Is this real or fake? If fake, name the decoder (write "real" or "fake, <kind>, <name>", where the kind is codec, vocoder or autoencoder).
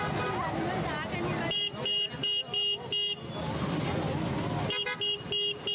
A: real